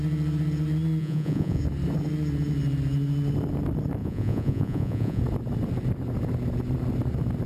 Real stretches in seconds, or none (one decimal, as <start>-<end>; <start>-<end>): 0.0-1.0; 1.6-4.0; 5.2-7.5